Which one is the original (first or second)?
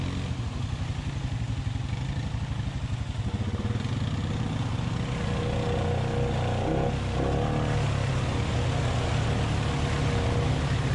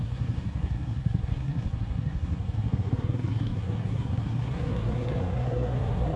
first